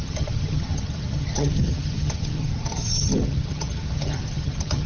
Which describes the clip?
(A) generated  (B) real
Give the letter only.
A